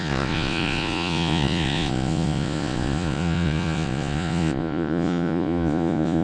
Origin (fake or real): fake